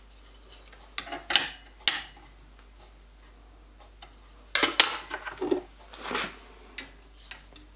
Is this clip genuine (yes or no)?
yes